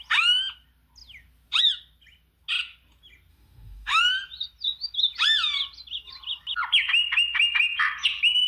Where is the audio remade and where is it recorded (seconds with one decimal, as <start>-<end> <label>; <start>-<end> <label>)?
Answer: 0.0-3.3 recorded; 3.3-4.0 remade; 4.0-8.5 recorded